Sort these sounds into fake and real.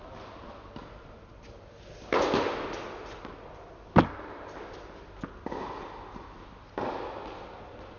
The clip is real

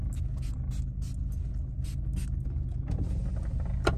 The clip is real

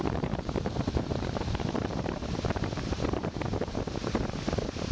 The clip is fake